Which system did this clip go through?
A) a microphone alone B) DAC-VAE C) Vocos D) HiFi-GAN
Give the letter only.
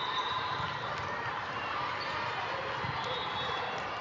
A